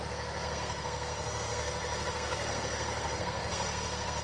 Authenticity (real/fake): fake